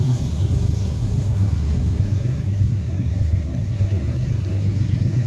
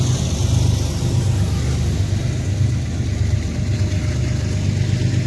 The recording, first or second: second